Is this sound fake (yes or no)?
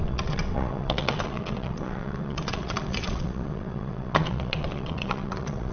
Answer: yes